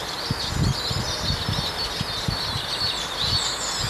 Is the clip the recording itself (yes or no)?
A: yes